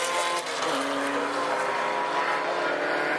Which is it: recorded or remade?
recorded